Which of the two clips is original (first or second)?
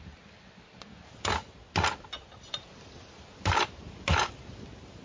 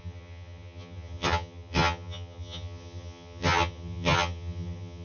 first